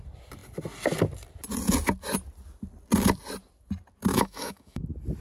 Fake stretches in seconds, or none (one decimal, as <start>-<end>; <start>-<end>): 4.1-4.8

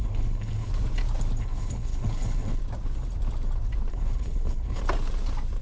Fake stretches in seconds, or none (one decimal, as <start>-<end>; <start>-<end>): 0.0-0.7; 1.4-2.6; 3.9-4.8

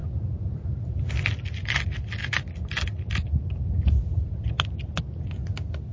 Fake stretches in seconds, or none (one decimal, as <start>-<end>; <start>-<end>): 0.0-1.1; 2.2-4.5